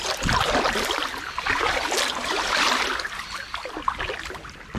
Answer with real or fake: real